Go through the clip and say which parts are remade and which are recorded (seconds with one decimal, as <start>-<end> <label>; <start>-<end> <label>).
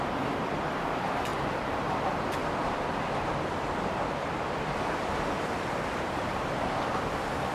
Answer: 0.0-7.5 remade